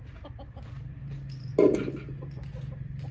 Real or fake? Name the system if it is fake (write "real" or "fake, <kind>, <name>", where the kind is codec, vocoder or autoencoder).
real